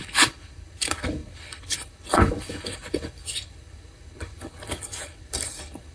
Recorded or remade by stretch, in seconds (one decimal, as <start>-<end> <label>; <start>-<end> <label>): 0.0-5.9 remade